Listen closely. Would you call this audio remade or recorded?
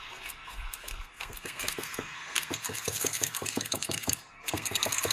remade